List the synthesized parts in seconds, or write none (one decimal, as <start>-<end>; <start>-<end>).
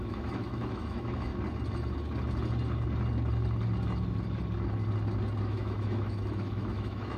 0.0-1.3; 5.4-7.2